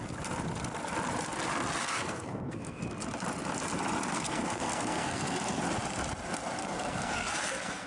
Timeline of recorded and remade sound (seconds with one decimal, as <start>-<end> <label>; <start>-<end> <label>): 0.0-1.8 recorded; 1.8-2.8 remade; 2.8-4.1 recorded; 4.1-5.6 remade; 5.6-6.6 recorded; 6.6-7.9 remade